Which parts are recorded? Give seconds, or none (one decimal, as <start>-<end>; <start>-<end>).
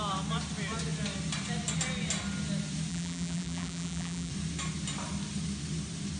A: 0.0-2.9; 4.3-6.2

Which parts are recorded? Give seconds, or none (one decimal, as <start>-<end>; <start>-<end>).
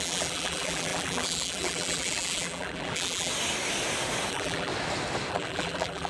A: 3.3-4.3; 4.7-5.3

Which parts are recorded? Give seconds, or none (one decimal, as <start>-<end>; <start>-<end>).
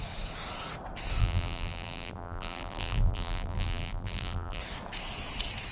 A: 0.0-1.2; 4.6-5.7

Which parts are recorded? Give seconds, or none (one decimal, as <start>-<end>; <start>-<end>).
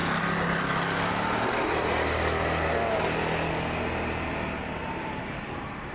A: 0.0-4.8; 5.4-5.9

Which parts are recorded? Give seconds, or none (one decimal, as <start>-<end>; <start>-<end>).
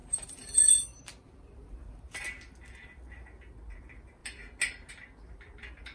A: 0.8-5.9